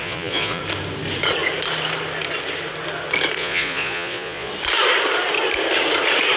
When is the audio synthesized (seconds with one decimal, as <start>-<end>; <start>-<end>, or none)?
0.0-0.6; 3.4-4.5